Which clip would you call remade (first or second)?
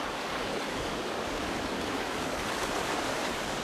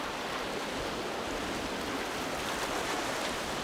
first